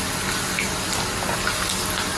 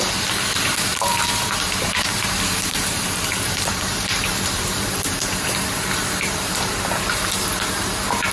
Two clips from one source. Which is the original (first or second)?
first